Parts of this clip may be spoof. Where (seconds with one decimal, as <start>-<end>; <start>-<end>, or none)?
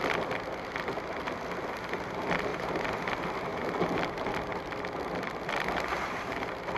2.5-3.0